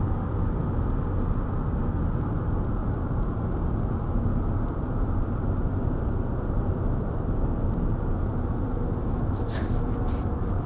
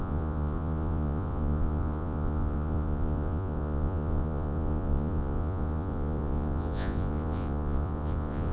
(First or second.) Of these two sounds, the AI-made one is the second